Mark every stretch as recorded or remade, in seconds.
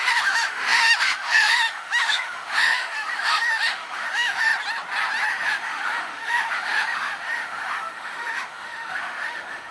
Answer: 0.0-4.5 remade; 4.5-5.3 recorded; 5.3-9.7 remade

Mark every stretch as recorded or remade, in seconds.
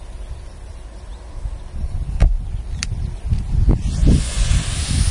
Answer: 0.0-4.0 recorded; 4.0-4.5 remade; 4.5-5.1 recorded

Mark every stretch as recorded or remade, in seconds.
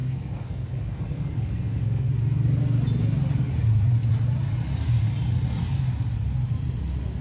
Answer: 0.0-2.1 remade; 2.1-7.2 recorded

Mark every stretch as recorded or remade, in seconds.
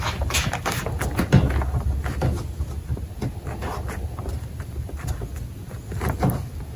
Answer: 0.0-6.8 recorded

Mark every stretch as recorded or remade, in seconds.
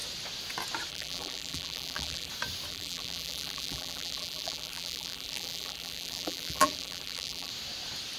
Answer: 0.0-0.9 recorded; 0.9-2.3 remade; 2.3-2.7 recorded; 2.7-7.5 remade; 7.5-8.2 recorded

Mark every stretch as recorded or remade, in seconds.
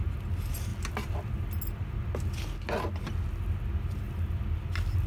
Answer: 0.0-5.1 recorded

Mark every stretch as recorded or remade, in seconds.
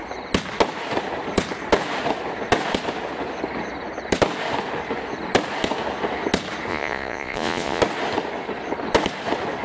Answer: 0.0-6.7 recorded; 6.7-7.8 remade; 7.8-9.6 recorded